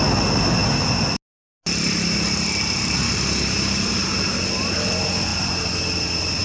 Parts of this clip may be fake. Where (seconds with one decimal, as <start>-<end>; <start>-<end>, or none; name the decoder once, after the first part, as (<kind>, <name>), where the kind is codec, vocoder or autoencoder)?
none